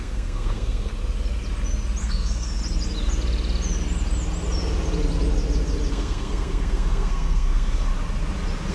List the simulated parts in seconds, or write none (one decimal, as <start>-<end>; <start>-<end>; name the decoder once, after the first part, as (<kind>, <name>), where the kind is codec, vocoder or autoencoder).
0.0-0.9 (codec, SNAC); 2.0-2.6; 5.9-7.9